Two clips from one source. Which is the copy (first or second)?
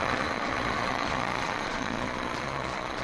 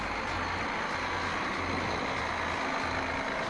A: first